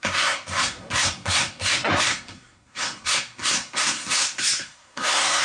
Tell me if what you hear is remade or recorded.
remade